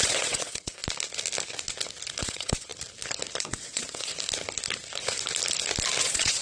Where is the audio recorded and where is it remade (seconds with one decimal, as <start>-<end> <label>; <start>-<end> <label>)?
0.0-0.8 remade; 0.8-2.2 recorded; 2.2-2.7 remade; 2.7-3.4 recorded; 3.4-4.1 remade; 4.1-6.0 recorded; 6.0-6.4 remade